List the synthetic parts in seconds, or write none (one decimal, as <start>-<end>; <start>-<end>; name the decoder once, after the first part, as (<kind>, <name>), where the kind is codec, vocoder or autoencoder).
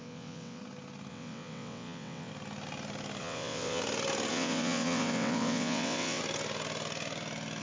0.0-0.6 (vocoder, WaveNeXt); 1.1-2.3; 3.2-3.8; 4.3-6.2